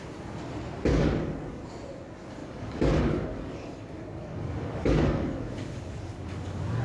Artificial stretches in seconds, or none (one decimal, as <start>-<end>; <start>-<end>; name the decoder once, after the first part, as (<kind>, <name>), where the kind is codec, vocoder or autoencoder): 0.9-1.7 (codec, DAC); 2.4-6.8